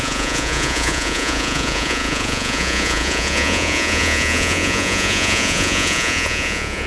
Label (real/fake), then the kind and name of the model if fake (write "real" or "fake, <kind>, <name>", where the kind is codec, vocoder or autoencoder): fake, vocoder, Vocos